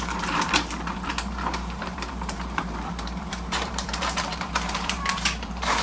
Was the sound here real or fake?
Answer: fake